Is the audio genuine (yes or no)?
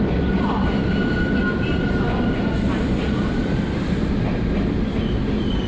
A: yes